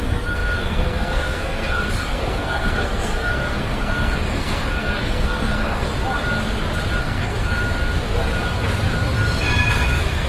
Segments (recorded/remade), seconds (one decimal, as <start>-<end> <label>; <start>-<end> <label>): 0.0-5.9 remade; 5.9-7.0 recorded; 7.0-7.6 remade; 7.6-9.7 recorded; 9.7-10.3 remade